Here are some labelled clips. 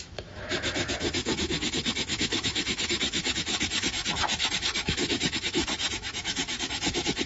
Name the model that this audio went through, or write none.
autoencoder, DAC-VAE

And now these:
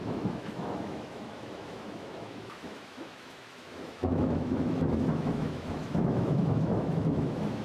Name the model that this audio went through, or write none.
autoencoder, DAC-VAE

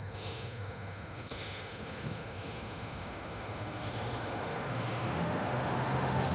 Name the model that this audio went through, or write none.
autoencoder, DAC-VAE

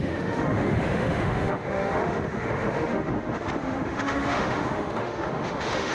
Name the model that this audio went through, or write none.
autoencoder, DAC-VAE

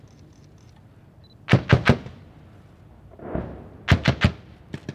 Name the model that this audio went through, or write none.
none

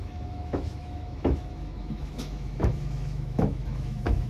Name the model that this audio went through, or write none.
autoencoder, DAC-VAE